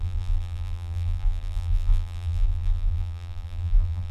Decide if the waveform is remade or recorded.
remade